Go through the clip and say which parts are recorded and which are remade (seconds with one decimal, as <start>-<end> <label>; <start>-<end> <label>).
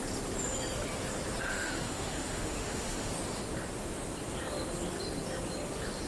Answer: 0.0-1.5 recorded; 1.5-3.1 remade; 3.1-6.1 recorded